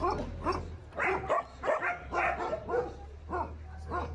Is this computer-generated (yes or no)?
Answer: no